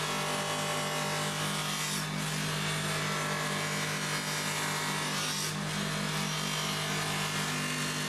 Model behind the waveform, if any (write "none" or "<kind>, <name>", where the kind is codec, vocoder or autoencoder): none